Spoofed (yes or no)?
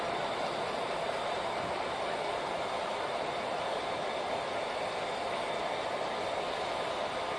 no